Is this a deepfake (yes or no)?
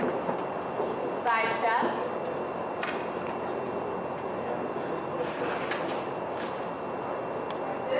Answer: no